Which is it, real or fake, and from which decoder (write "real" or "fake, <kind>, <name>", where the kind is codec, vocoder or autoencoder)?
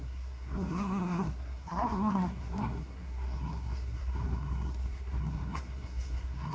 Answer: fake, codec, SNAC